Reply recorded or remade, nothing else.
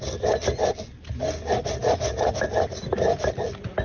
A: recorded